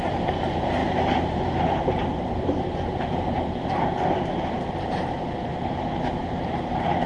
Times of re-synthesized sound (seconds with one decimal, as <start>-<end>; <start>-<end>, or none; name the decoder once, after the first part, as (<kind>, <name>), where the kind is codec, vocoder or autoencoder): 0.0-7.1 (vocoder, BigVGAN v2)